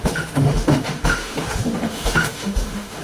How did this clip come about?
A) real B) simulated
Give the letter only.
B